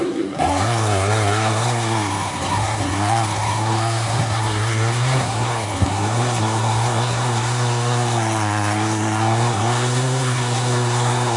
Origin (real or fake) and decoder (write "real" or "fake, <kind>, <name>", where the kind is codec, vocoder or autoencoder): fake, codec, SNAC